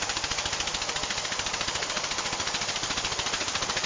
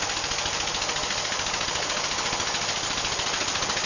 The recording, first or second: second